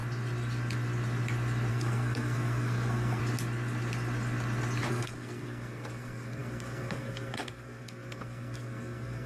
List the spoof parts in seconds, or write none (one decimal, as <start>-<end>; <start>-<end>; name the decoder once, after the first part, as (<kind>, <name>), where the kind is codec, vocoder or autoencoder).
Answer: 1.7-3.2 (codec, SNAC); 4.9-9.3